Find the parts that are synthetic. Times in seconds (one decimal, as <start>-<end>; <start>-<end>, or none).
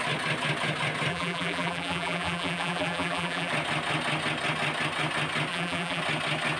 1.1-3.5; 5.5-6.0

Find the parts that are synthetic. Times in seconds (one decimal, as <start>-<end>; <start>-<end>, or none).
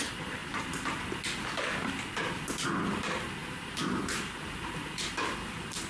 3.4-5.1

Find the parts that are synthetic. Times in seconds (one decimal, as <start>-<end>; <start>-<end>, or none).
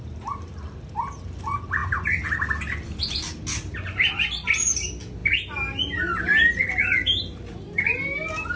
none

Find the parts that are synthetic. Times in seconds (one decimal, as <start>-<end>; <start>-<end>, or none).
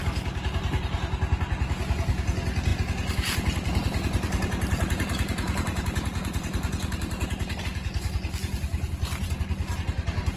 2.7-7.6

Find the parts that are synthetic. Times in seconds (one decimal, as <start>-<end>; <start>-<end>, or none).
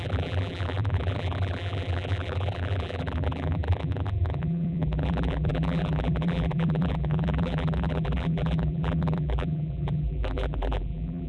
0.0-11.3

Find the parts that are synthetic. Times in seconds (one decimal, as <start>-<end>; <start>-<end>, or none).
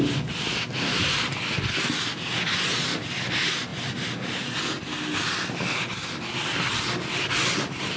none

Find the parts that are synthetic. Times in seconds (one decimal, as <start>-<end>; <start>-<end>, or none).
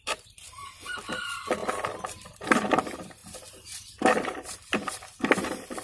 0.0-1.6; 2.1-3.2; 4.2-5.8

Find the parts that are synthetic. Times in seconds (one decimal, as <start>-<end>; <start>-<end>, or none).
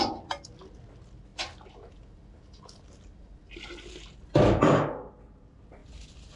none